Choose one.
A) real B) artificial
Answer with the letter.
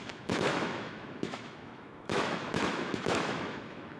B